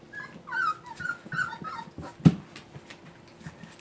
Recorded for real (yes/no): yes